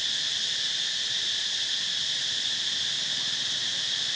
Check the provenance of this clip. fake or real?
real